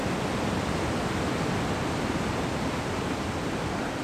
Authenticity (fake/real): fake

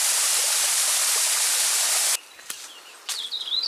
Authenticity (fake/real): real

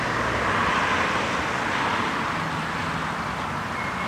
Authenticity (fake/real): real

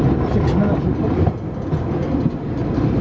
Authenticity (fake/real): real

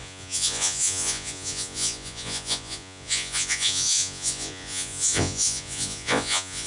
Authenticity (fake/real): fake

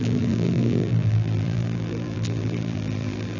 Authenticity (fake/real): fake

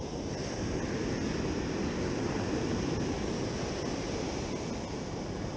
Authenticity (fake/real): real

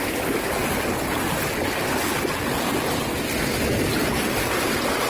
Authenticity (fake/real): real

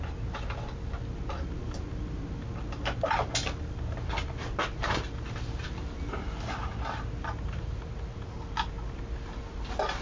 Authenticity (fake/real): real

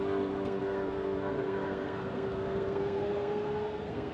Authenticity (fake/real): fake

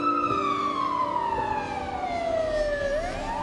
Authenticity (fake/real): real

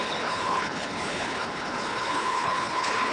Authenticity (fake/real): fake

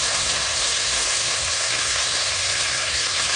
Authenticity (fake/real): fake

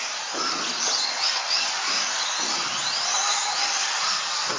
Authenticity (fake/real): real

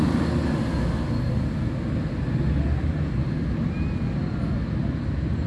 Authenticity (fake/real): real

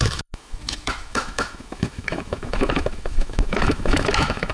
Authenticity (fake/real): fake